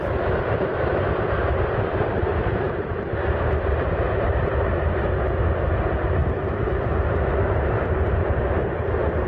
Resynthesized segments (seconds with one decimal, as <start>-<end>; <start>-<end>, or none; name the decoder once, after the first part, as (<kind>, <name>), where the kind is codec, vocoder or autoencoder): 1.4-4.4 (vocoder, BigVGAN v2)